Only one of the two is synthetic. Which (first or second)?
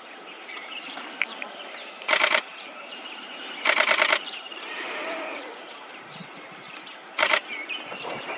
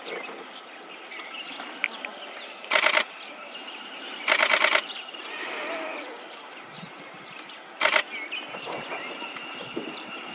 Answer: first